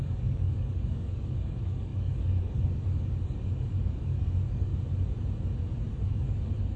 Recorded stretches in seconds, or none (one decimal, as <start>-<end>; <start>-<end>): 4.7-5.9